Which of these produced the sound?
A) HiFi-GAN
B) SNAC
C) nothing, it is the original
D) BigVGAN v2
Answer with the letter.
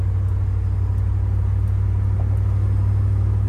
C